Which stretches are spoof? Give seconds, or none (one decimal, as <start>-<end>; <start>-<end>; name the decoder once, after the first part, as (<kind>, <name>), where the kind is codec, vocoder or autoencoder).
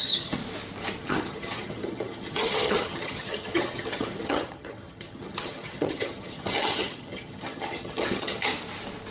0.0-0.4 (vocoder, HiFi-GAN); 1.0-8.5